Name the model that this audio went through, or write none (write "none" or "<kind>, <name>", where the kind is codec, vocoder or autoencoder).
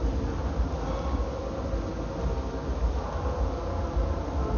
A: none